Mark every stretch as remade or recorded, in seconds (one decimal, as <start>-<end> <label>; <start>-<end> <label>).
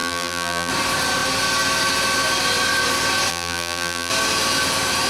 0.0-0.7 remade; 0.7-3.3 recorded; 3.3-4.1 remade; 4.1-5.1 recorded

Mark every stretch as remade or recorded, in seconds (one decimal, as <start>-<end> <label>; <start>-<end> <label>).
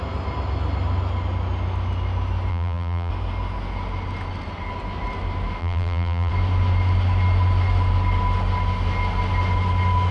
0.0-2.5 recorded; 2.5-3.1 remade; 3.1-5.6 recorded; 5.6-6.3 remade; 6.3-10.1 recorded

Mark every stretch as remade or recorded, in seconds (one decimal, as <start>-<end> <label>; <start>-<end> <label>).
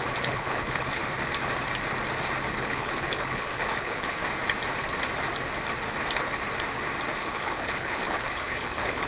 0.0-1.0 remade; 1.0-2.5 recorded; 2.5-4.2 remade; 4.2-7.2 recorded; 7.2-9.1 remade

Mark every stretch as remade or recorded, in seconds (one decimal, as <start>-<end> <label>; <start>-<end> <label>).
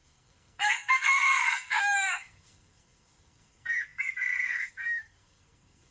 0.0-5.9 remade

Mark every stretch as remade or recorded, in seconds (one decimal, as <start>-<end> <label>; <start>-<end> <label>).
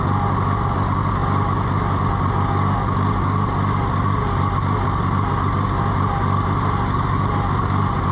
0.0-8.1 recorded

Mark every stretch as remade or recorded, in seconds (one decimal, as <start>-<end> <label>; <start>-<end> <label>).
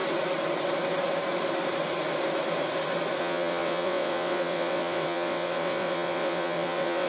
0.0-3.2 recorded; 3.2-7.1 remade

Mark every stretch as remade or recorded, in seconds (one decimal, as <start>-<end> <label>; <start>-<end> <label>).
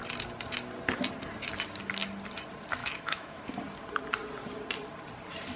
0.0-2.8 recorded; 2.8-3.5 remade; 3.5-5.6 recorded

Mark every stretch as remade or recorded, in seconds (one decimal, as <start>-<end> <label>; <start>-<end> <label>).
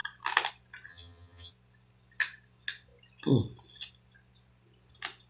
0.0-0.9 recorded; 0.9-1.5 remade; 1.5-5.3 recorded